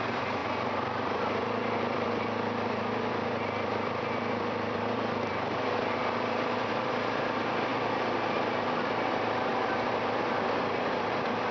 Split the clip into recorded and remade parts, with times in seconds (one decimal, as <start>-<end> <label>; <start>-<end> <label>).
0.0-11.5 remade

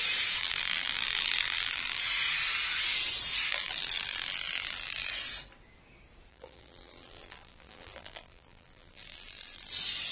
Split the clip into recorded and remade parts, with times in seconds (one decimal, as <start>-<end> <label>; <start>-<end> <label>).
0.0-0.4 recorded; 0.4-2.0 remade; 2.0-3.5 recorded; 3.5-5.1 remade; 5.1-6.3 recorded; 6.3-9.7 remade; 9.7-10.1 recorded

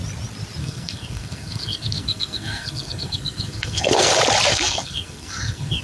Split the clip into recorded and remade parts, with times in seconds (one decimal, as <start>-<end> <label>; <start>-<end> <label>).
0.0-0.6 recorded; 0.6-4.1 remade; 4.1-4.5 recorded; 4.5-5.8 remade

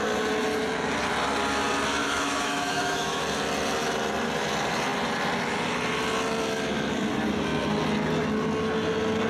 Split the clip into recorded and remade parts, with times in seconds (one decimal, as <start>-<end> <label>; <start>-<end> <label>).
0.0-2.0 recorded; 2.0-3.2 remade; 3.2-9.3 recorded

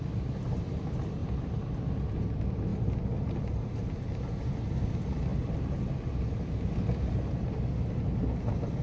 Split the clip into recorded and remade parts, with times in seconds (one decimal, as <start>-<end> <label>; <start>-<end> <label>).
0.0-8.8 recorded